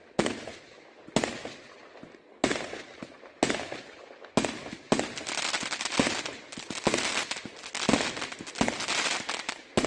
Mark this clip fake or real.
real